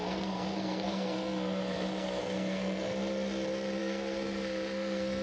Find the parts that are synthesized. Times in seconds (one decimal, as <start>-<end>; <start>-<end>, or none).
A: 0.0-2.9; 3.8-5.2